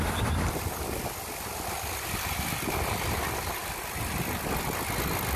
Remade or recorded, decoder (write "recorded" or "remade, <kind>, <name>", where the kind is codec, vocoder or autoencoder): recorded